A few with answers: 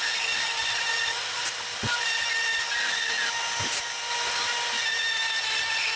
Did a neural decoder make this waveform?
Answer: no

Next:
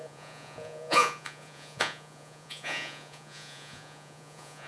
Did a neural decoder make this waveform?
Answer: yes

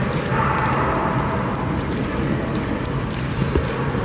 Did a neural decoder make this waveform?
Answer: no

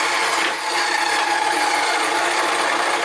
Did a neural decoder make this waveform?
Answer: no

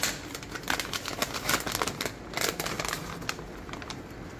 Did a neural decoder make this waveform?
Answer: no